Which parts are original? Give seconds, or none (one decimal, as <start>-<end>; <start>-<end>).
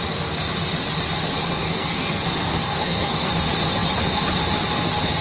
0.0-1.6; 3.3-5.2